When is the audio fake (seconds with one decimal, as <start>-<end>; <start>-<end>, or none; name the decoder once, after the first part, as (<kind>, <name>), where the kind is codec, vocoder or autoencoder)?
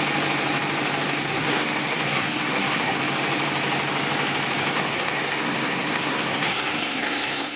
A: 1.2-3.0 (codec, SNAC); 4.7-7.6